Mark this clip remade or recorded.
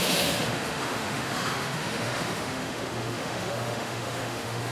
remade